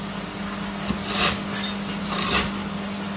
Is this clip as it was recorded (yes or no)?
yes